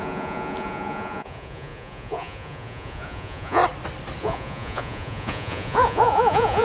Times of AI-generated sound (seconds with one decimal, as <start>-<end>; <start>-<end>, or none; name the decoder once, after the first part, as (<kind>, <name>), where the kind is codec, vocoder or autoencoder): 0.0-3.6 (vocoder, Vocos); 4.2-6.6